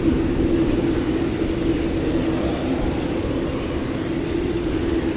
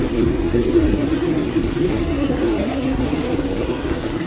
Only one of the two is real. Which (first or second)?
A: first